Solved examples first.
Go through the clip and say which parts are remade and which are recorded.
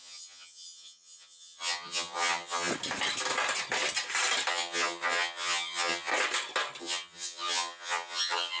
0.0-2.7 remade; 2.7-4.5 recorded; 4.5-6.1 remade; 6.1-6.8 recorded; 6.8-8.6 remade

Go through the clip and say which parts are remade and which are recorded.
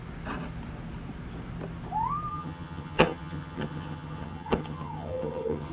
0.0-2.3 recorded; 2.3-5.7 remade